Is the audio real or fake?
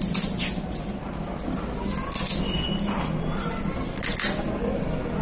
real